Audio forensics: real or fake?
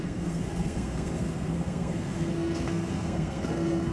fake